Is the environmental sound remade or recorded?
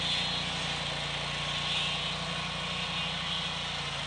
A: recorded